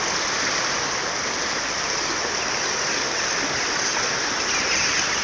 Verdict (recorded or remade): recorded